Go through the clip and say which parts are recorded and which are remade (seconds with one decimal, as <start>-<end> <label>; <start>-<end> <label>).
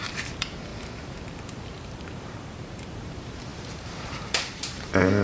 0.0-5.2 remade